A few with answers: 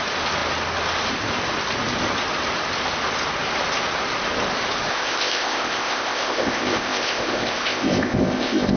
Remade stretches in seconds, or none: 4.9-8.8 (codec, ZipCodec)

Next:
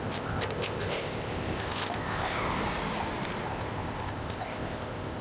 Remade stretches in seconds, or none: 0.0-2.6 (codec, ZipCodec); 3.5-5.2

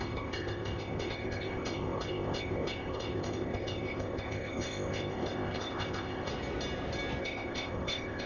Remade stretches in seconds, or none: 0.0-6.3 (codec, ZipCodec); 7.2-8.3

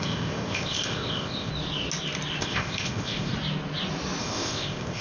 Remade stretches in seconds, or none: 0.0-1.5 (codec, ZipCodec); 2.4-3.3; 4.2-5.0

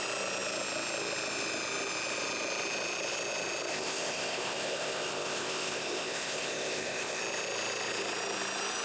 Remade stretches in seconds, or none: 3.7-7.2 (codec, ZipCodec)